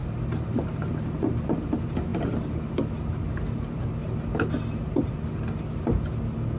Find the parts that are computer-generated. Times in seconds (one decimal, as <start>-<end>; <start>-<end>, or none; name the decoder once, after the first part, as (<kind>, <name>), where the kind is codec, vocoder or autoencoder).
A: 0.0-4.0 (vocoder, BigVGAN v2)

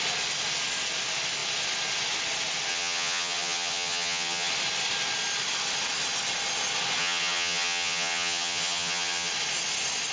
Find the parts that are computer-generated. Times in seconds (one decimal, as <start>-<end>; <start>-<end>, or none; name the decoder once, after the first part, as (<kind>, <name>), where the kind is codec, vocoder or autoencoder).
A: 2.7-4.5 (vocoder, HiFi-GAN); 7.0-9.3

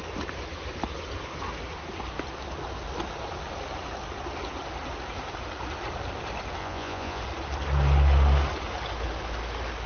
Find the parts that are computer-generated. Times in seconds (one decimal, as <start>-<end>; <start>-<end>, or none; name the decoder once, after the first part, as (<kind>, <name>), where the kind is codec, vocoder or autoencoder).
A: 6.6-7.2 (vocoder, Vocos)

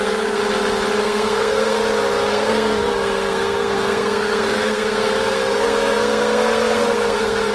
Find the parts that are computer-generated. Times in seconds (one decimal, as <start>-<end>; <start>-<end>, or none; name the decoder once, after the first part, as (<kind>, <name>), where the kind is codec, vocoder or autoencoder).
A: 0.0-0.4 (codec, SNAC); 1.0-1.8; 2.3-7.5

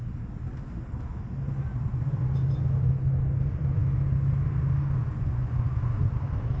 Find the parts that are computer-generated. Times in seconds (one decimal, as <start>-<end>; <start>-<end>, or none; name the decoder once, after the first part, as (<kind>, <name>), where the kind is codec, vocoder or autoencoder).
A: 5.0-5.8 (vocoder, Vocos)

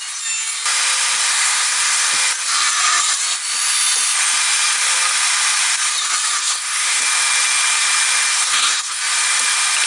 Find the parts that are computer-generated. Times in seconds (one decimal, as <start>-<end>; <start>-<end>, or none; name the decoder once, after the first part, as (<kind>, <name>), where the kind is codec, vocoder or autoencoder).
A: 1.3-2.1 (codec, SNAC); 6.4-7.0; 8.3-9.0

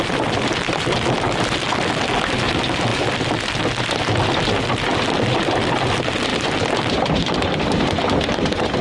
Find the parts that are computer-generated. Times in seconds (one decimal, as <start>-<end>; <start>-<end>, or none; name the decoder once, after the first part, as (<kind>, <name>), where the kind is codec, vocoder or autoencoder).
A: none

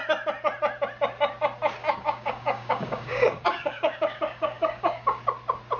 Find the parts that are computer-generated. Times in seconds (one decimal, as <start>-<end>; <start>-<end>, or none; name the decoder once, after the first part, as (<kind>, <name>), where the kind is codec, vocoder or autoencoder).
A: 1.8-5.2 (codec, DAC)